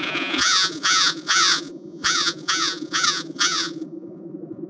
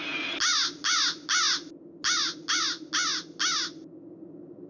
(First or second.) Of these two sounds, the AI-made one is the first